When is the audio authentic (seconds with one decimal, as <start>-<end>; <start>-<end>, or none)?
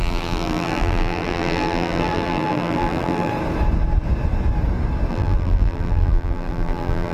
3.3-5.1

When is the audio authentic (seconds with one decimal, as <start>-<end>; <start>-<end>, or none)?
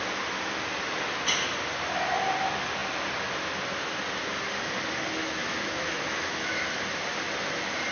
0.0-5.2; 6.6-7.9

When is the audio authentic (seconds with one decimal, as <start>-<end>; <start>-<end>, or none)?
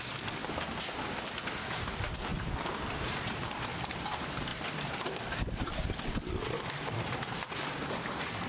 none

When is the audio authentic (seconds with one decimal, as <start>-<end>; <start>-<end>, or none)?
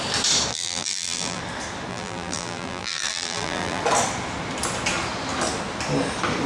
0.0-0.5; 1.4-1.9; 3.8-6.5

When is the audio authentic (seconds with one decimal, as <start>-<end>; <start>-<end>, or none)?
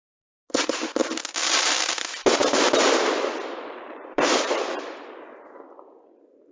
0.0-1.0; 1.7-2.4; 4.8-6.5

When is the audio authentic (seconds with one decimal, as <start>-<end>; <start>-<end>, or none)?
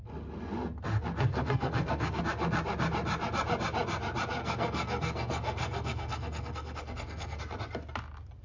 0.0-1.3; 2.2-4.4; 7.4-8.4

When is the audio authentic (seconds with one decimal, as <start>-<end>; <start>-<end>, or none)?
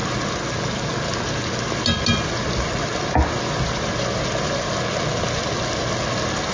0.0-6.5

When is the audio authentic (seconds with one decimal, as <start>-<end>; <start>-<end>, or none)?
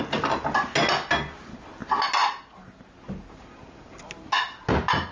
0.0-5.1